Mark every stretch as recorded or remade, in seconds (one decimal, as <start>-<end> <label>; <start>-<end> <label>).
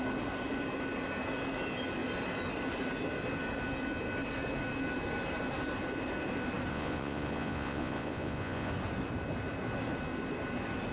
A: 0.0-6.7 recorded; 6.7-8.7 remade; 8.7-10.9 recorded